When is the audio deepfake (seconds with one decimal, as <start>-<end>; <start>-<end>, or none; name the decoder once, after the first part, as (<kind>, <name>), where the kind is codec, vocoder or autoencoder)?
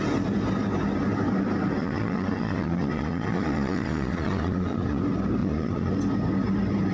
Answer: 1.8-5.0 (vocoder, Vocos); 5.4-5.9